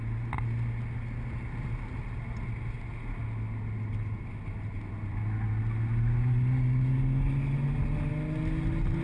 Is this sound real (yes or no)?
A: yes